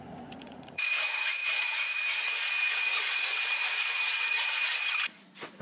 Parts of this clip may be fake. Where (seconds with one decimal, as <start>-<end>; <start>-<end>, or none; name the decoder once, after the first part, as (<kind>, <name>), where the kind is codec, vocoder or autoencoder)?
0.0-5.6 (vocoder, Vocos)